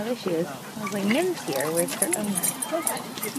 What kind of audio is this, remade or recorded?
recorded